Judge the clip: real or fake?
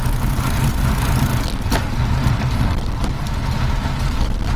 real